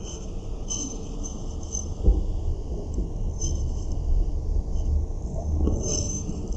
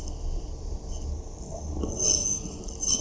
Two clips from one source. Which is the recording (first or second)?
second